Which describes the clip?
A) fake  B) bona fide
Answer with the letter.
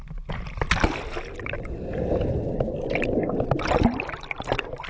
B